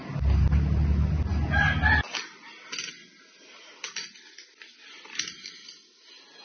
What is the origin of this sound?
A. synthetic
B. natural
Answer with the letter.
B